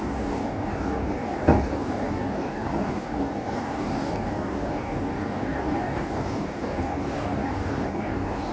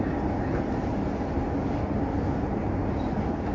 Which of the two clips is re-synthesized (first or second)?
first